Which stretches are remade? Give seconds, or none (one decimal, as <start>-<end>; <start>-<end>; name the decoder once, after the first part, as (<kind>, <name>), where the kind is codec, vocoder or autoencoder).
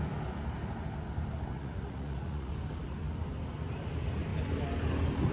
1.5-2.5 (vocoder, Vocos)